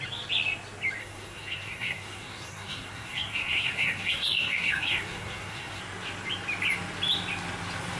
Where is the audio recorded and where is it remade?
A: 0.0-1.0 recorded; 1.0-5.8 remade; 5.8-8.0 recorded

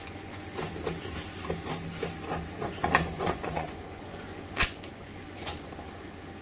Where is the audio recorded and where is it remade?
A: 0.0-0.7 remade; 0.7-2.6 recorded; 2.6-5.7 remade; 5.7-6.4 recorded